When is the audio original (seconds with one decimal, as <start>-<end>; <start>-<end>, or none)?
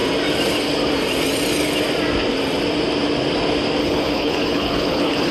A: 0.0-3.8